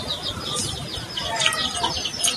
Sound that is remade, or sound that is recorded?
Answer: recorded